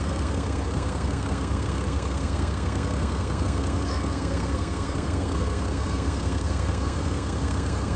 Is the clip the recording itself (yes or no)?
no